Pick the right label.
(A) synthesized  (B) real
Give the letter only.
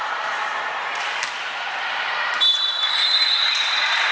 A